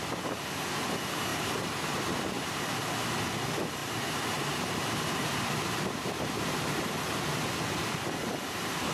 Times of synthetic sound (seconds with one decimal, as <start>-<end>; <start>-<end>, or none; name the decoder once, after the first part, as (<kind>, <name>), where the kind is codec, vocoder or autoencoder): 1.3-2.8 (vocoder, BigVGAN v2); 3.8-7.0